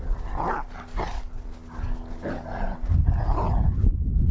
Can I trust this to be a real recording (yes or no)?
yes